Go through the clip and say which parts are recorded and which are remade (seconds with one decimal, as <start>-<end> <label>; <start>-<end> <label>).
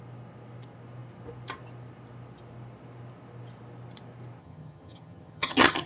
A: 0.0-4.4 recorded; 4.4-5.9 remade